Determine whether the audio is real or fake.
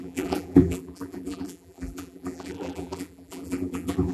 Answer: fake